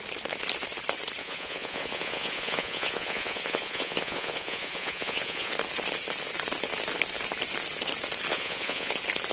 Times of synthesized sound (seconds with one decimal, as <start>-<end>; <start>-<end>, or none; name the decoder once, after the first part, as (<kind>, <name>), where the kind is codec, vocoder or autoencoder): 1.2-5.5 (vocoder, Vocos); 8.3-8.9